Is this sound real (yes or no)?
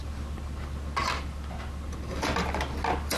yes